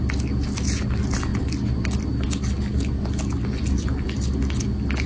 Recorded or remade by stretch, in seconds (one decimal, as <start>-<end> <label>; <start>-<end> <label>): 0.0-5.1 recorded

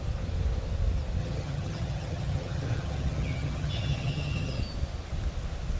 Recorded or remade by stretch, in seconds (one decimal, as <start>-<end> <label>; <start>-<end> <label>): 0.0-1.2 recorded; 1.2-4.6 remade; 4.6-5.8 recorded

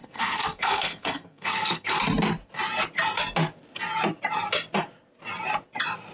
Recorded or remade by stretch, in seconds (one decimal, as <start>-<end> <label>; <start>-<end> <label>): 0.0-2.0 remade; 2.0-6.1 recorded

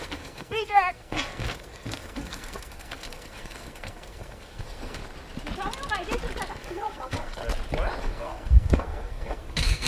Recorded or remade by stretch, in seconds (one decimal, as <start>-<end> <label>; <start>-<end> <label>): 0.0-5.0 remade; 5.0-6.5 recorded; 6.5-7.4 remade; 7.4-8.0 recorded; 8.0-9.9 remade

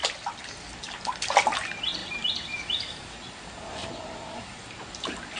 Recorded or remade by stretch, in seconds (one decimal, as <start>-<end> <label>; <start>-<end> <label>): 0.0-2.0 recorded; 2.0-3.4 remade; 3.4-3.8 recorded; 3.8-4.9 remade; 4.9-5.4 recorded